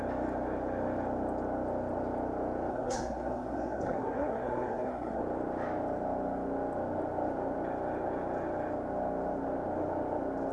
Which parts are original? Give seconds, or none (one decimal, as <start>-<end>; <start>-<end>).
0.0-2.7; 5.2-10.5